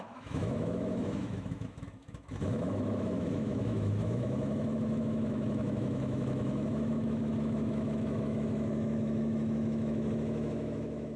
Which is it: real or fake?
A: fake